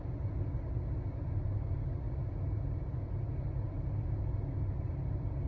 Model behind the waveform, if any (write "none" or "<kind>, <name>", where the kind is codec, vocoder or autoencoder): none